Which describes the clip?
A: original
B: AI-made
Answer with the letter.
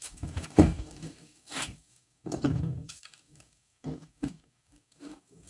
B